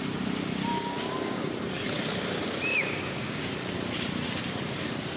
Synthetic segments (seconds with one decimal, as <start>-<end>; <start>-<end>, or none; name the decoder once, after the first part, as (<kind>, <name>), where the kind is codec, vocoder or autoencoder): 0.7-1.5 (codec, DAC); 2.7-3.5